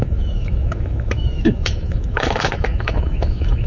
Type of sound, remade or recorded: remade